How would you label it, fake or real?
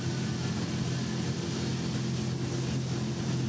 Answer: real